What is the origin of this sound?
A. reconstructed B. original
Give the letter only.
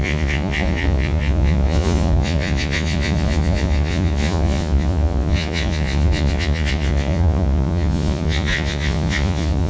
A